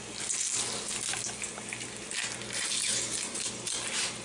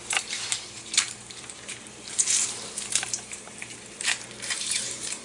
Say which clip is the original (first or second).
first